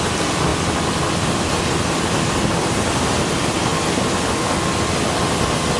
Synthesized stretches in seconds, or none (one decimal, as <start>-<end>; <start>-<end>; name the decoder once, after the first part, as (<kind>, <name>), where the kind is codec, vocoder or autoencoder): none